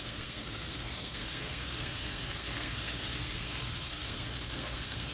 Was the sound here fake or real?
fake